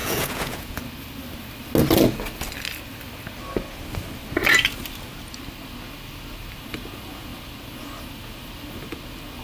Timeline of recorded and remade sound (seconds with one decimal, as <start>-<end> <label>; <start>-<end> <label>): 0.0-0.8 remade; 0.8-9.4 recorded